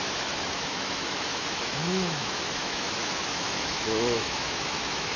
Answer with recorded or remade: remade